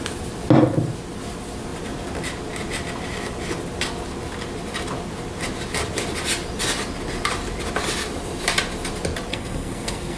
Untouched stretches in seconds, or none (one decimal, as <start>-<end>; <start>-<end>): 0.0-9.3